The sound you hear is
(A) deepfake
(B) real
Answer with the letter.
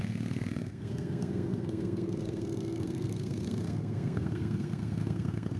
A